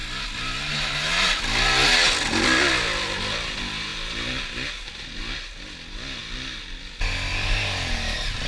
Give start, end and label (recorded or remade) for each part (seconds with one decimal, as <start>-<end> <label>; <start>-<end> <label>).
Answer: 0.0-8.5 recorded